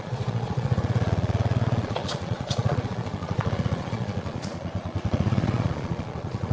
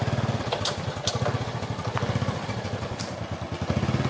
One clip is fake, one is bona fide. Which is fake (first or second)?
first